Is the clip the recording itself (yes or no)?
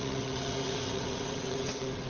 no